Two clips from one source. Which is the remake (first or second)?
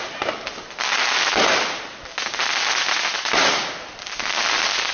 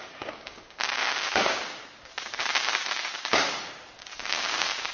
second